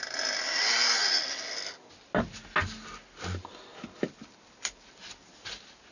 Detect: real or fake real